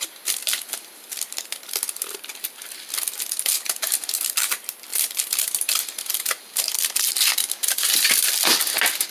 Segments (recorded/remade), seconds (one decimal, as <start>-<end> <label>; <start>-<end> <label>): 0.0-9.1 recorded